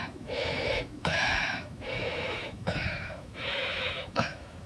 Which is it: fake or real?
fake